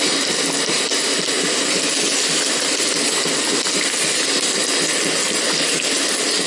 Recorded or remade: recorded